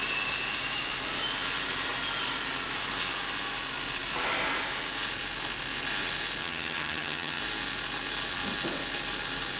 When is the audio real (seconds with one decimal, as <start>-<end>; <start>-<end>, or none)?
0.0-6.4; 7.4-9.6